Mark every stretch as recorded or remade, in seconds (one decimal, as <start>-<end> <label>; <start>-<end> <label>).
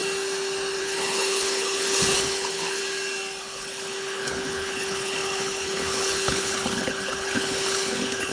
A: 0.0-0.8 recorded; 0.8-2.8 remade; 2.8-3.4 recorded; 3.4-8.3 remade